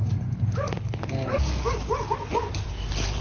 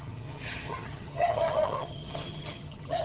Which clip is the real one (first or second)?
first